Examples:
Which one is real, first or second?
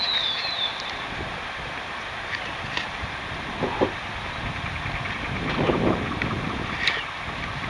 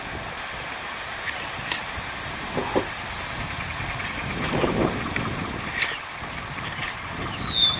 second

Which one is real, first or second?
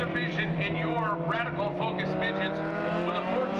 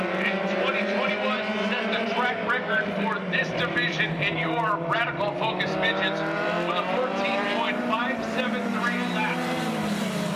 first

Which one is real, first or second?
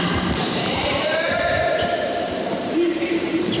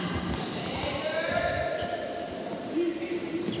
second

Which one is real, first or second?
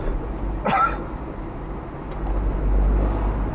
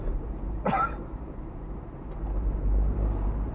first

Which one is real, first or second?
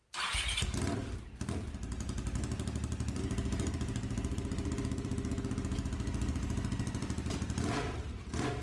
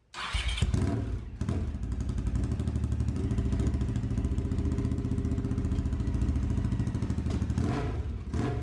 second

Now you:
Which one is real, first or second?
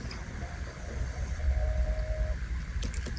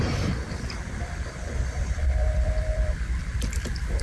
first